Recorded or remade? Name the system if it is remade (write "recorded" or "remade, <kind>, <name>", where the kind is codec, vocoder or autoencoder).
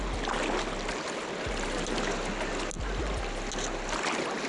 recorded